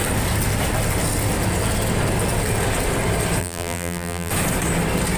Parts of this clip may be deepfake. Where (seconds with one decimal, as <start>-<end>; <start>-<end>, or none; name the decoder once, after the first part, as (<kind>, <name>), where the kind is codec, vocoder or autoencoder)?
3.4-4.3 (vocoder, BigVGAN v2)